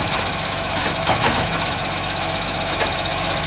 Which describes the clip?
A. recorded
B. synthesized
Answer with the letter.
B